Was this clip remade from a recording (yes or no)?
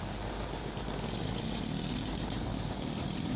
no